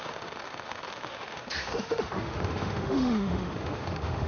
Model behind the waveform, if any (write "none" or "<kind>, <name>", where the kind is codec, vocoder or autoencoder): autoencoder, DAC-VAE